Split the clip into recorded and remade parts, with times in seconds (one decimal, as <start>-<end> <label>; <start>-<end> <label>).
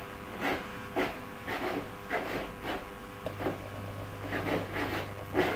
0.0-0.7 recorded; 0.7-2.5 remade; 2.5-3.0 recorded; 3.0-5.0 remade; 5.0-5.6 recorded